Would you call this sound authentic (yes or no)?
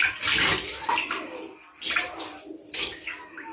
yes